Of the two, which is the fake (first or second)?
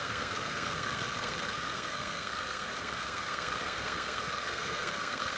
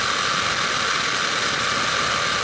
first